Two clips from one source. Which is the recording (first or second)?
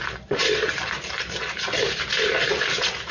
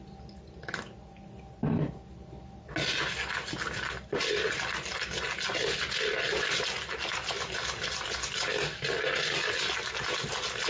second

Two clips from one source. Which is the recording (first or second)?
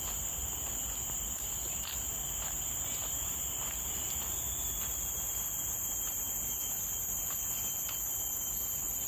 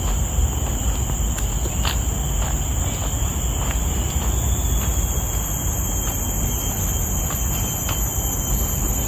second